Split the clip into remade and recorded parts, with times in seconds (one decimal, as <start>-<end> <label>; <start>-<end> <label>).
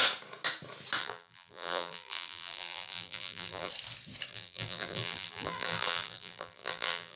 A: 0.0-1.0 recorded; 1.0-3.7 remade; 3.7-4.3 recorded; 4.3-7.2 remade